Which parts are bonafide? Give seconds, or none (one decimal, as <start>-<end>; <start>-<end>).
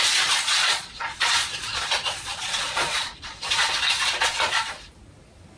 0.0-0.6; 3.7-4.2; 4.7-5.6